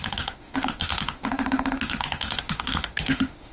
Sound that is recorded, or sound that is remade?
remade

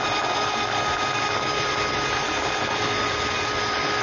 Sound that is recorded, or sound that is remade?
recorded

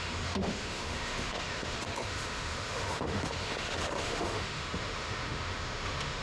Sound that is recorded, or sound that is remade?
remade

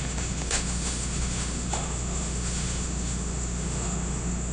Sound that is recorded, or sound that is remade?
remade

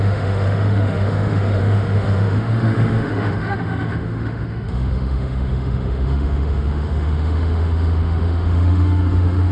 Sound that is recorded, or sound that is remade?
remade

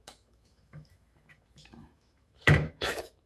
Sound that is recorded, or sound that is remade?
remade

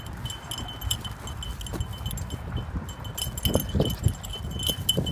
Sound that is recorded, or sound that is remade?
recorded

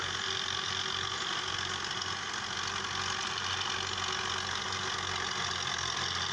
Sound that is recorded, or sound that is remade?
recorded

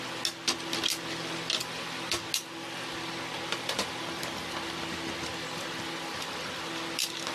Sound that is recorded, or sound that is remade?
recorded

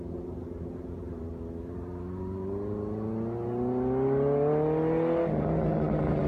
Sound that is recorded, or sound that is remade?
recorded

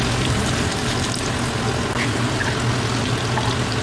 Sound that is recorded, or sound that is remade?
recorded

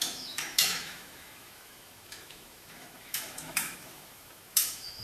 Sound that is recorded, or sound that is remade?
remade